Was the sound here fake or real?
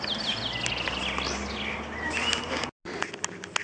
real